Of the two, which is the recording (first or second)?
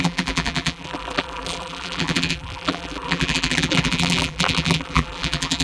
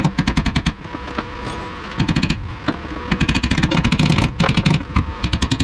second